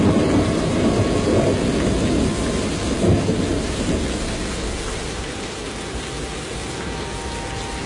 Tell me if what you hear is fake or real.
real